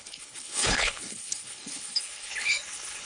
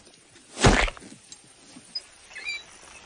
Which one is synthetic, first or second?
first